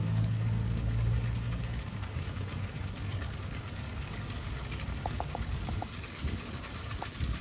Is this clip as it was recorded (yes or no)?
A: no